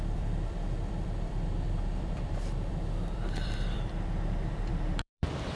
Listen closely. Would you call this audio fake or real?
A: fake